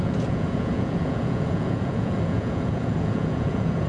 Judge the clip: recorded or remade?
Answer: remade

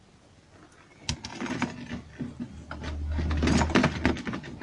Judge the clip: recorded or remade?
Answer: recorded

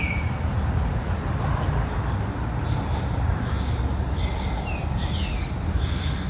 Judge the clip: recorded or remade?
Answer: recorded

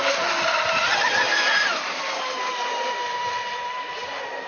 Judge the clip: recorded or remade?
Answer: recorded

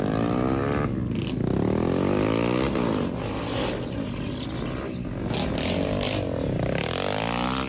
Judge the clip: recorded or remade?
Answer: recorded